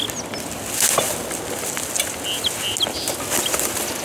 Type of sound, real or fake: real